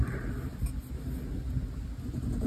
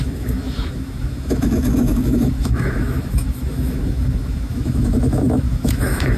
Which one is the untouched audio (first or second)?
first